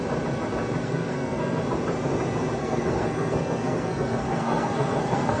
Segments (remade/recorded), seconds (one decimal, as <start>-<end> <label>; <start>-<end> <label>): 0.0-0.8 recorded; 0.8-1.6 remade; 1.6-2.6 recorded; 2.6-5.4 remade